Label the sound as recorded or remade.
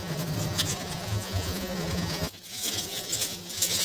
remade